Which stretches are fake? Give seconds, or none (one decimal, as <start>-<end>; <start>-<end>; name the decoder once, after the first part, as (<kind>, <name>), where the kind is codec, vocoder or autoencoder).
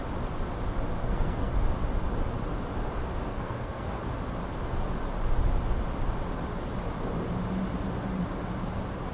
1.0-1.5 (codec, SNAC); 3.3-4.0